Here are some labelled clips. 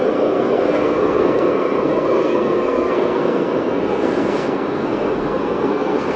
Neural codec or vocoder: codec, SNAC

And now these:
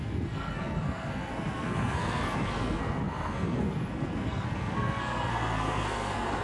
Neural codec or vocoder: codec, SNAC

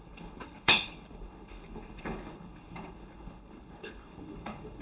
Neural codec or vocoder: codec, HILCodec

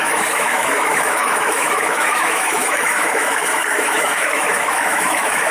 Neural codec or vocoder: autoencoder, DAC-VAE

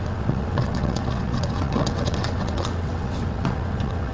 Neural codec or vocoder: vocoder, WaveNeXt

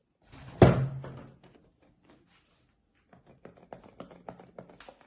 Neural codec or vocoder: none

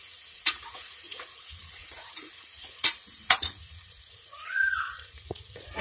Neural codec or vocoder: vocoder, Vocos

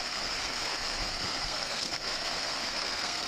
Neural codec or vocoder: codec, SNAC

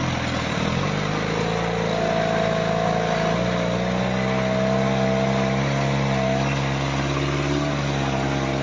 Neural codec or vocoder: none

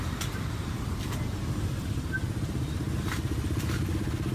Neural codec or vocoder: none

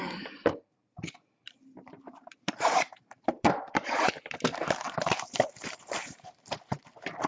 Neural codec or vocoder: vocoder, BigVGAN v2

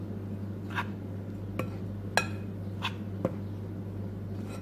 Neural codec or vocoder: none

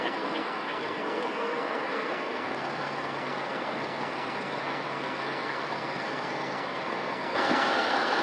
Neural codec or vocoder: codec, SNAC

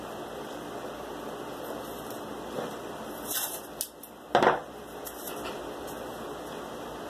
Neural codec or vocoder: none